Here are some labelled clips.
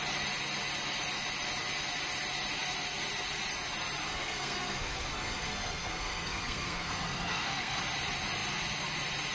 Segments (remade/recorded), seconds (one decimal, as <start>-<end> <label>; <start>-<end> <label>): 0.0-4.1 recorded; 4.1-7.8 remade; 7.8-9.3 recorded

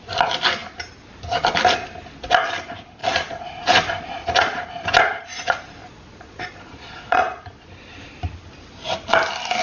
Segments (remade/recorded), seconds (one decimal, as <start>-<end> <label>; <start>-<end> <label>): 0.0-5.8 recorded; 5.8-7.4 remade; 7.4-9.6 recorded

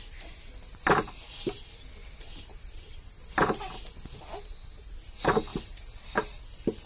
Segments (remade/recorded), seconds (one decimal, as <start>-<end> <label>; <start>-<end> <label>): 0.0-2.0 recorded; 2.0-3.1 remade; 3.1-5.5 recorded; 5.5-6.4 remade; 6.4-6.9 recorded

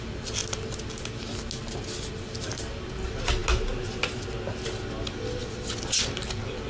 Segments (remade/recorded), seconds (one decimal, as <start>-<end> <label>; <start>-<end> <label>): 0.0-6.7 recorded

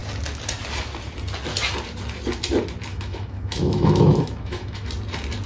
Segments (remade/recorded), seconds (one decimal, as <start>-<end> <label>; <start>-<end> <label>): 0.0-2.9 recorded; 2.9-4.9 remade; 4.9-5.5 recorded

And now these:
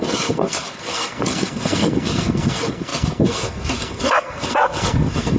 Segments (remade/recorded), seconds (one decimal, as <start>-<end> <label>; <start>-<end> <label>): 0.0-5.4 remade

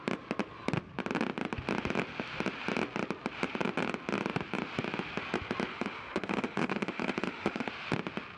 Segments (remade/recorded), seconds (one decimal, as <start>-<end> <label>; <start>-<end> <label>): 0.0-5.7 recorded; 5.7-7.7 remade; 7.7-8.4 recorded

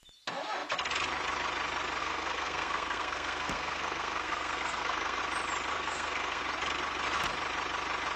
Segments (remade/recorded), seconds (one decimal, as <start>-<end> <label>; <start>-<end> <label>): 0.0-2.0 recorded; 2.0-5.2 remade; 5.2-5.7 recorded; 5.7-6.4 remade; 6.4-8.2 recorded